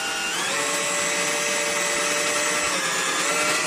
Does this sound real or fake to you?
real